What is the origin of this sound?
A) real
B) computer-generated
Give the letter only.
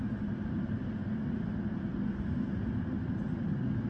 A